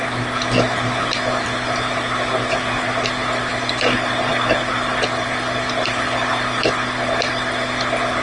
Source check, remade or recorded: recorded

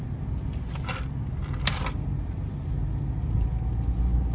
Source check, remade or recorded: recorded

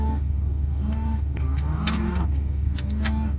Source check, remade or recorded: remade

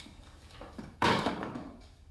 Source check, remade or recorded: remade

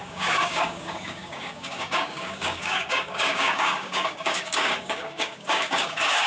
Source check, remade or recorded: remade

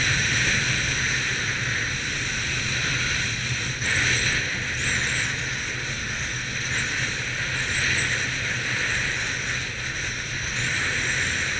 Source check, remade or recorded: recorded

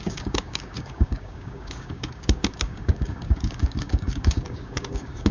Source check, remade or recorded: remade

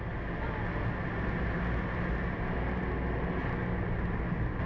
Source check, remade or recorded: recorded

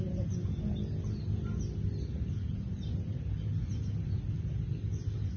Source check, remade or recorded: recorded